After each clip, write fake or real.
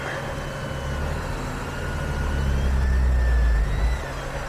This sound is real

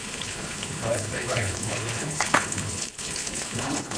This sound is fake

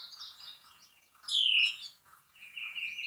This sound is fake